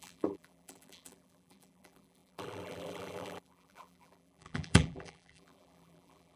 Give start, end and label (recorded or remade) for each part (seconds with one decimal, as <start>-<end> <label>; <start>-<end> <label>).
0.0-6.4 remade